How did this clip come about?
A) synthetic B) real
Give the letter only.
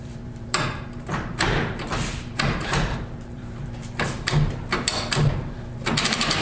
A